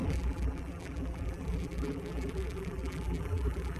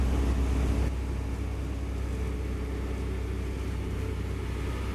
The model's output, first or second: first